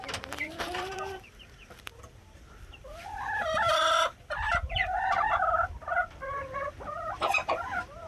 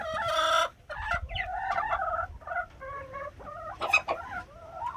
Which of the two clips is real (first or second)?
second